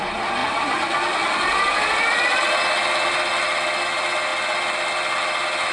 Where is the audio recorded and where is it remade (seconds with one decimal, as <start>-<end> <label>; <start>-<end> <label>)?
0.0-0.4 recorded; 0.4-2.5 remade; 2.5-5.7 recorded